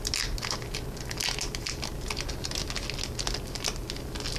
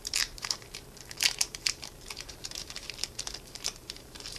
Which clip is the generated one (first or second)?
second